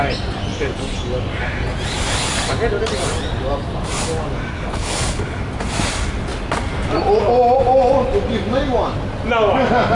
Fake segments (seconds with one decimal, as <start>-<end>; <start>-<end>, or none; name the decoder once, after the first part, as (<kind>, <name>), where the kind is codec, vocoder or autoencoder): 4.5-5.4 (codec, HILCodec)